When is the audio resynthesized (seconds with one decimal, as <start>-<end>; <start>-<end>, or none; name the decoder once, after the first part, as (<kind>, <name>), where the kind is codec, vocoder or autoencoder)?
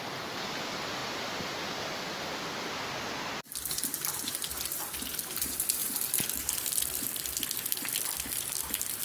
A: none